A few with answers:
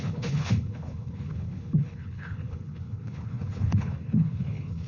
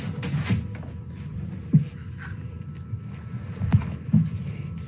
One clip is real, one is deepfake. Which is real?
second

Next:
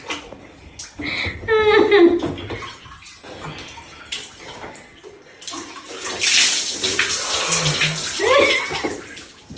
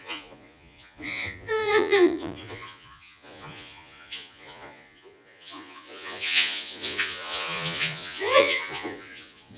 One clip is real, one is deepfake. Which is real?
first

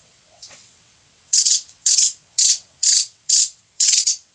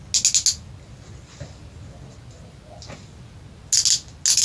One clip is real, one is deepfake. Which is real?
second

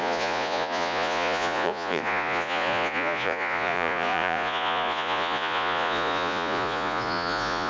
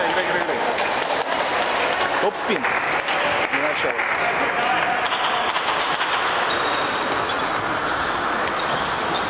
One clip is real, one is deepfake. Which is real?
second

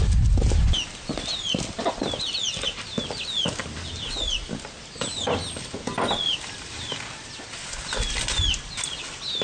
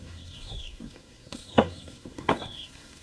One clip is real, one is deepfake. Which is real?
first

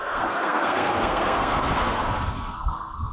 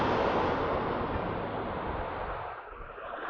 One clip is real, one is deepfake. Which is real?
second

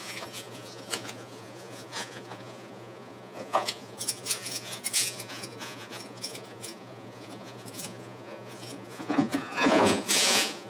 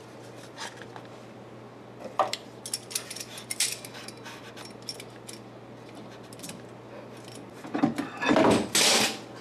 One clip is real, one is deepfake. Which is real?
second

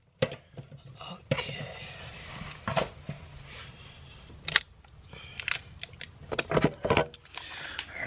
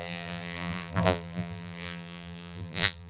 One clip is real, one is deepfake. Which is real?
first